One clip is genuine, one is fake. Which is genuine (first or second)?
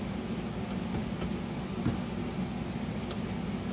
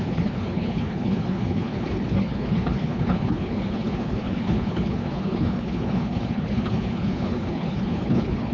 first